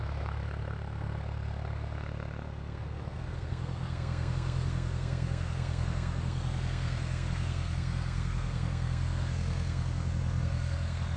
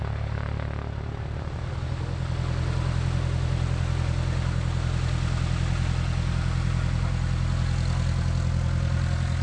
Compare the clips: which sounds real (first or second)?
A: second